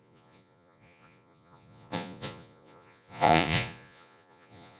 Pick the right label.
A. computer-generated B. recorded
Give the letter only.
A